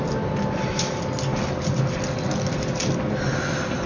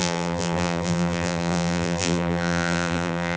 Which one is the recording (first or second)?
first